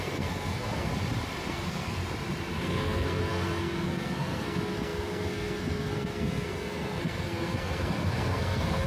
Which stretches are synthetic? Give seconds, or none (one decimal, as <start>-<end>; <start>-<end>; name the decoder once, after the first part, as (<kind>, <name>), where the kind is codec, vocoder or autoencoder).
0.0-0.9 (codec, SNAC); 1.5-2.0; 2.6-8.9